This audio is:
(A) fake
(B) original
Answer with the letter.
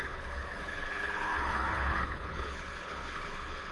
A